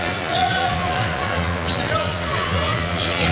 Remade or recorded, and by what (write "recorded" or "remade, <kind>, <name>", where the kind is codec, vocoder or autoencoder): remade, vocoder, Vocos